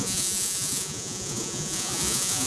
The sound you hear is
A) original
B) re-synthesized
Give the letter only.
B